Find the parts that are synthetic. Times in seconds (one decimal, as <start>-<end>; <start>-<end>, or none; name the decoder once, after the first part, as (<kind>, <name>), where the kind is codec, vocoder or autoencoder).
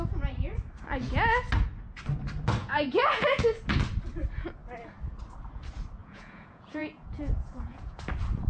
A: 2.6-3.6 (vocoder, Vocos); 6.0-8.0